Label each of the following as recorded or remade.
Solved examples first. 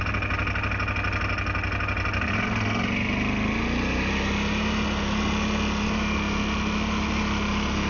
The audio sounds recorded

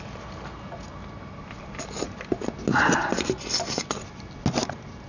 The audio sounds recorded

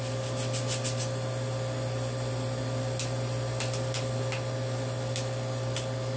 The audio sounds recorded